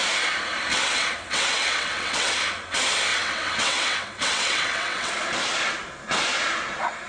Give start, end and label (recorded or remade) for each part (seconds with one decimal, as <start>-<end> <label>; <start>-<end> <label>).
0.0-0.7 recorded; 0.7-2.3 remade; 2.3-3.1 recorded; 3.1-5.1 remade; 5.1-7.1 recorded